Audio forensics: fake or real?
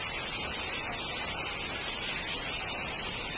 real